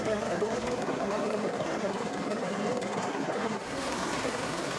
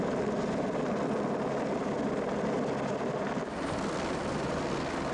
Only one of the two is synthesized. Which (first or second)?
first